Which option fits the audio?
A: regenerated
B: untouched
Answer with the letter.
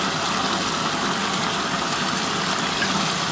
B